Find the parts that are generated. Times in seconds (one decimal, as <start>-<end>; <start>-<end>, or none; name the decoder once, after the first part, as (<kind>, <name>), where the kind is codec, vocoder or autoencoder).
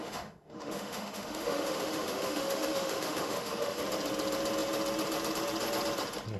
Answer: 0.0-3.8 (autoencoder, DAC-VAE)